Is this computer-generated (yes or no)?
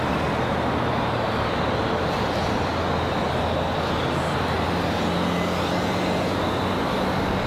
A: no